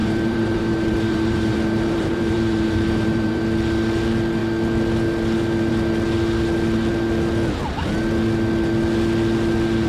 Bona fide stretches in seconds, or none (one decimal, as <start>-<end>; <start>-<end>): 3.4-9.9